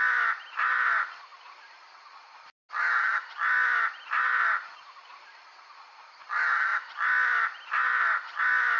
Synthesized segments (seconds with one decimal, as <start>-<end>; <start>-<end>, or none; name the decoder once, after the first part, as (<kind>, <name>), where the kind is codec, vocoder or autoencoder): none